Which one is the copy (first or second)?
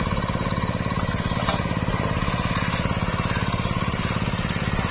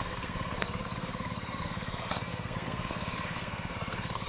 second